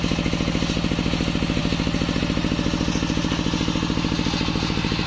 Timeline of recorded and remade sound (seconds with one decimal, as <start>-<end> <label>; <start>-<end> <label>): 0.0-5.1 recorded